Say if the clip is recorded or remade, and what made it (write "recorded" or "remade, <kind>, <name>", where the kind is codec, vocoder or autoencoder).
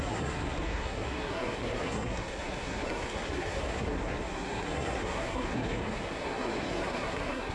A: remade, codec, SNAC